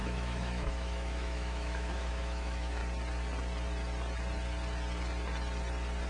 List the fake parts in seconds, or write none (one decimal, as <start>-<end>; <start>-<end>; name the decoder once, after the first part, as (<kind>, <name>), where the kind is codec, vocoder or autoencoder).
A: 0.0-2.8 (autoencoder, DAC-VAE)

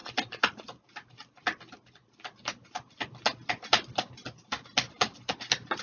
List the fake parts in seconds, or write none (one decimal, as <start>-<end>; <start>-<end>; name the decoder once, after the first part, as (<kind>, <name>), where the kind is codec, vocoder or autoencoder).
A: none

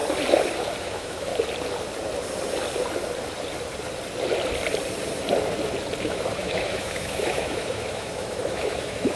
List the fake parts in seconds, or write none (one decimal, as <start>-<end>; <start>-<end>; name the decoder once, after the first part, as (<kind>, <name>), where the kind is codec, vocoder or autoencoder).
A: 0.8-1.3 (autoencoder, DAC-VAE); 6.0-9.2

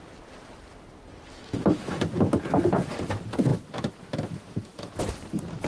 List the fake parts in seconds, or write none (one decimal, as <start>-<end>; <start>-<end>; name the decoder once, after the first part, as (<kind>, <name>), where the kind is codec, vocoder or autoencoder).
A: 1.3-1.9 (autoencoder, DAC-VAE); 3.5-5.0

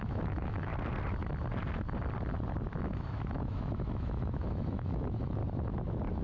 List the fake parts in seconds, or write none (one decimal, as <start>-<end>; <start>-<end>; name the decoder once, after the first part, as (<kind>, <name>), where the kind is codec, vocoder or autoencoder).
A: 0.0-0.7 (autoencoder, DAC-VAE); 2.8-5.4

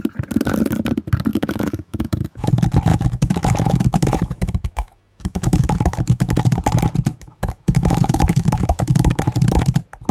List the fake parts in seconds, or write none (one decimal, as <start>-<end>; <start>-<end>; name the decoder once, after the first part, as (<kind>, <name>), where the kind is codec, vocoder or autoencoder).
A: 1.3-2.5 (autoencoder, DAC-VAE); 2.9-6.3; 7.1-9.2